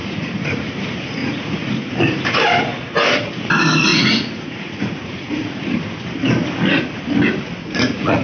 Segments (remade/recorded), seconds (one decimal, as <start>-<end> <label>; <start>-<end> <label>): 0.0-0.7 remade; 0.7-1.2 recorded; 1.2-1.7 remade; 1.7-3.9 recorded; 3.9-5.8 remade; 5.8-7.6 recorded; 7.6-8.2 remade